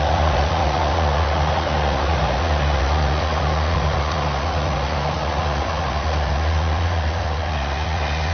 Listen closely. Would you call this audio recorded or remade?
remade